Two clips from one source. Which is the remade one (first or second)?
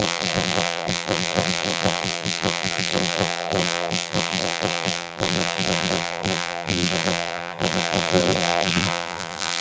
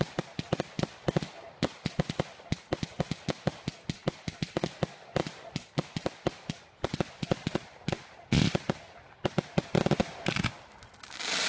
first